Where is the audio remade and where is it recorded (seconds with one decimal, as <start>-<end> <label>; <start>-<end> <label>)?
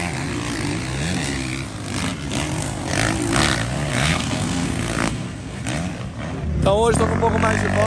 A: 0.0-3.9 recorded; 3.9-5.6 remade; 5.6-7.9 recorded